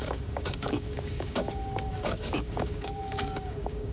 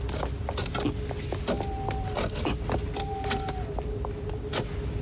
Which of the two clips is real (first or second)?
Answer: second